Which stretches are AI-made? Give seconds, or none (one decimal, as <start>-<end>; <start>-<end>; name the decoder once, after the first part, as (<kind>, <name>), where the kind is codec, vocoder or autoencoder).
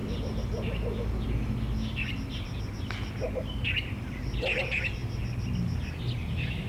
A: none